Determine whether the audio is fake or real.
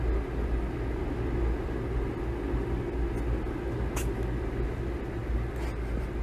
real